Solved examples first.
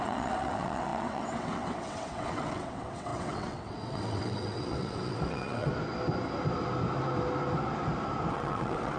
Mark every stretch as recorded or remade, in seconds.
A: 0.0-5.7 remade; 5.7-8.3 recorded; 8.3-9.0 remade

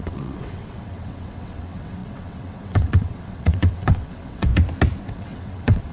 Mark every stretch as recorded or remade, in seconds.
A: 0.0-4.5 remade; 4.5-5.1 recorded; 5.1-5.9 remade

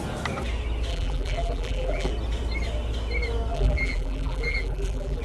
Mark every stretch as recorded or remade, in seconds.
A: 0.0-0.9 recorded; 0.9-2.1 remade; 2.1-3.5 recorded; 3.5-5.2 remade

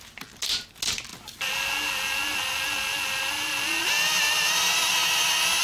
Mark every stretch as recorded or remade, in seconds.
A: 0.0-5.6 recorded